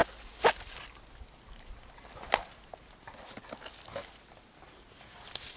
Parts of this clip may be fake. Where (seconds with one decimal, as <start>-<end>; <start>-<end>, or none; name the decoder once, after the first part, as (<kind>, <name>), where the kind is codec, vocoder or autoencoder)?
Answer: none